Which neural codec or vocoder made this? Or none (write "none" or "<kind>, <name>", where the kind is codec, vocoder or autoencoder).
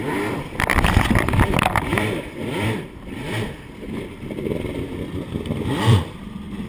vocoder, BigVGAN v2